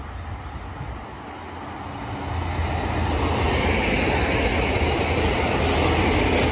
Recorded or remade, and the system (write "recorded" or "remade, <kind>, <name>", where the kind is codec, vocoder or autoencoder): recorded